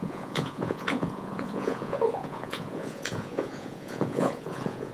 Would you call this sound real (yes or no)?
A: no